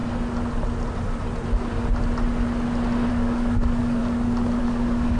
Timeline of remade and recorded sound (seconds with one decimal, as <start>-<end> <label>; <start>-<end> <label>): 0.0-3.1 recorded; 3.1-4.0 remade; 4.0-4.6 recorded; 4.6-5.2 remade